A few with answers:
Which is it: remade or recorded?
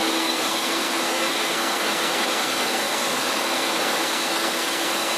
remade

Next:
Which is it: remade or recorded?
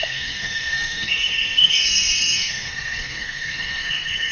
remade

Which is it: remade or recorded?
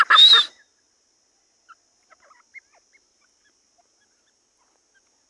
recorded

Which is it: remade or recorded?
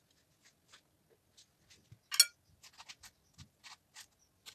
recorded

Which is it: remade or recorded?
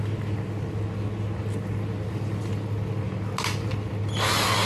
recorded